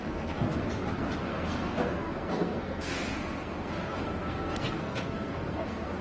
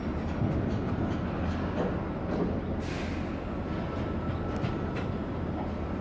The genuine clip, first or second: second